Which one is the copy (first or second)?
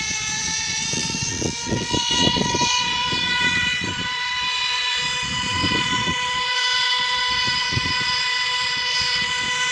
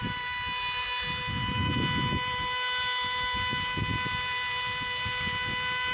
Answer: first